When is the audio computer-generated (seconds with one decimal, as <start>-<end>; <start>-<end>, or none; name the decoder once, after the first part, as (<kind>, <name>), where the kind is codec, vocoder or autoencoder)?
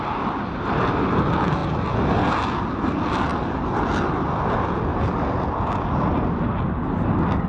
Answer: 4.9-6.3 (vocoder, BigVGAN v2)